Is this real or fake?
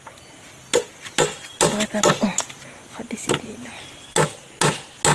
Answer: real